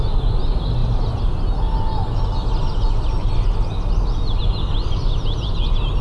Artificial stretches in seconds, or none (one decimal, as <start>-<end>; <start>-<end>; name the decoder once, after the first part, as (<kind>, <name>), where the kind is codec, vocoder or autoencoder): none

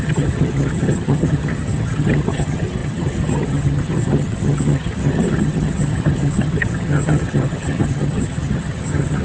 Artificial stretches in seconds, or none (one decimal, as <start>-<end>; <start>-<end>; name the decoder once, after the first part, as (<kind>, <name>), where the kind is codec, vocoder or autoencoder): 0.0-9.2 (vocoder, HiFi-GAN)

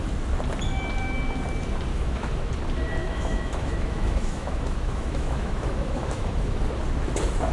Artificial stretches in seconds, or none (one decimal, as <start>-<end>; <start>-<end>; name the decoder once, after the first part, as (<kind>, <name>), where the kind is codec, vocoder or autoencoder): 1.9-2.5 (autoencoder, DAC-VAE); 3.0-6.6